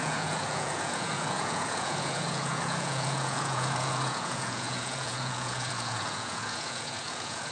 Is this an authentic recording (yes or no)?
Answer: no